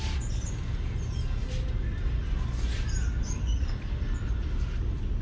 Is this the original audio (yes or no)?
yes